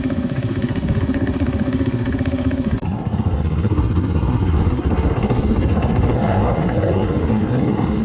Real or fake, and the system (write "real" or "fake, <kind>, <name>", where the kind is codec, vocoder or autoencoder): fake, codec, SNAC